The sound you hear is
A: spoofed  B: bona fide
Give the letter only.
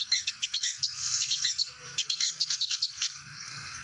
A